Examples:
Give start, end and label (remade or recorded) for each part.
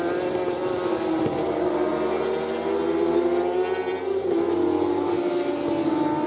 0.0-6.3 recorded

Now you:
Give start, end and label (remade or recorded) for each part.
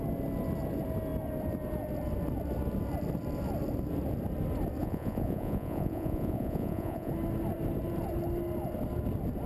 0.0-4.8 recorded; 4.8-7.1 remade; 7.1-9.5 recorded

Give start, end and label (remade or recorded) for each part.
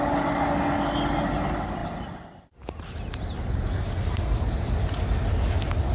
0.0-5.9 recorded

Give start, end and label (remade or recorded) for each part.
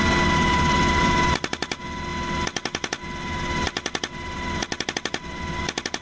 0.0-6.0 recorded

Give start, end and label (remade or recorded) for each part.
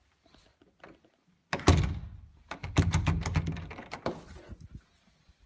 0.0-5.5 recorded